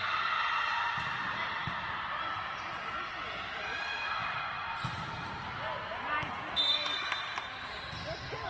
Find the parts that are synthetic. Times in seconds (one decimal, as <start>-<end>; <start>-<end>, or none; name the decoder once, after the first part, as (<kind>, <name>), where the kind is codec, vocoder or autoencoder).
none